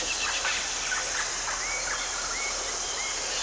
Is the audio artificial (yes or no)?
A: no